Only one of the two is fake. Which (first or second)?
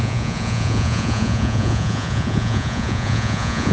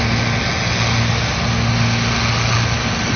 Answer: first